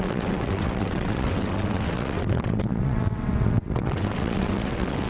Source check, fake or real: fake